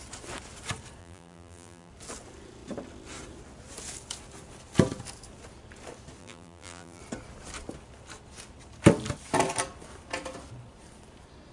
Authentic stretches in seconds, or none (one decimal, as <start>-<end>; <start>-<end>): 0.0-1.0; 1.9-6.2; 7.0-11.5